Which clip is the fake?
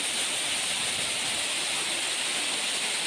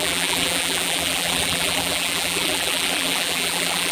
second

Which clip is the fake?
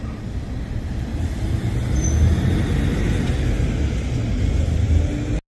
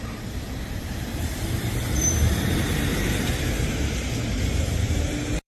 second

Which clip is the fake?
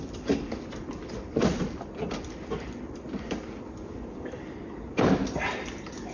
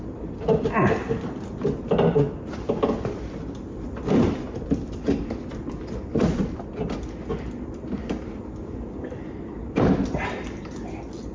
first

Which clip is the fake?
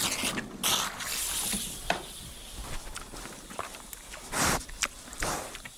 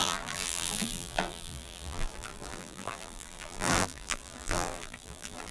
second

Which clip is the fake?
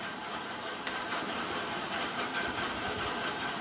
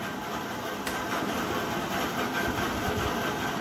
first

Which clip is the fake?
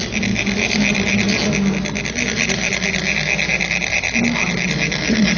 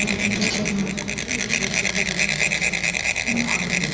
second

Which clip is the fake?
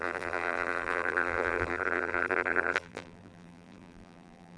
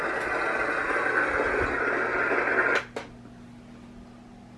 first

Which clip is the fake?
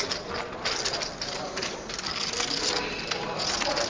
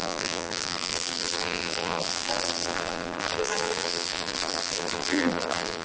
second